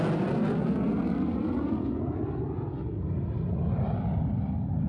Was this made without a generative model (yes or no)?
yes